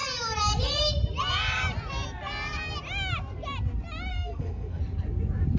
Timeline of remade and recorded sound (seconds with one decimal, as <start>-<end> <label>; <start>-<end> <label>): 0.0-4.1 recorded; 4.1-4.8 remade; 4.8-5.6 recorded